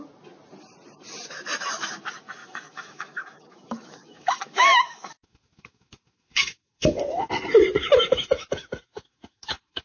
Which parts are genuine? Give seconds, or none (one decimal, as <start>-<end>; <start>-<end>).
0.0-2.4; 7.3-7.8